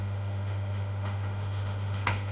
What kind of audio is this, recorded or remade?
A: remade